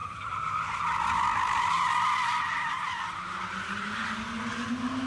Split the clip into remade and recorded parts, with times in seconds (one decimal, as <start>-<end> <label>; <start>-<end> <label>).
0.0-5.1 recorded